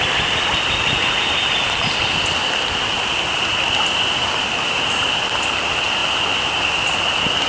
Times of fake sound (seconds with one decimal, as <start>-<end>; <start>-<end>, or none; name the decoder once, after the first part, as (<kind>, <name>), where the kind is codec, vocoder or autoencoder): none